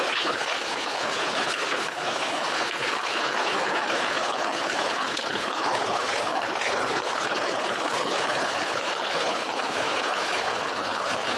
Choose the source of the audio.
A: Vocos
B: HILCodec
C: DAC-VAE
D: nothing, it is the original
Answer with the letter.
B